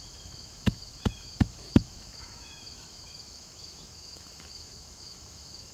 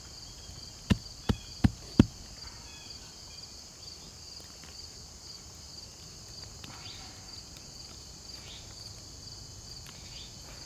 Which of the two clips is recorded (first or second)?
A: second